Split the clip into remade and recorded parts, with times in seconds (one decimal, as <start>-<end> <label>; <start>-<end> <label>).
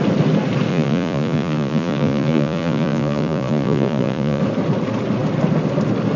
0.0-0.7 recorded; 0.7-4.4 remade; 4.4-6.2 recorded